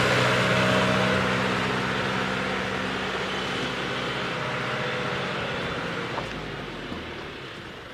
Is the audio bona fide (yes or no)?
yes